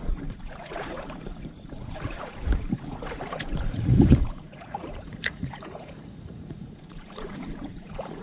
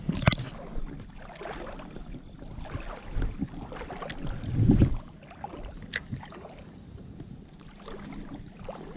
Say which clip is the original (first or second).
second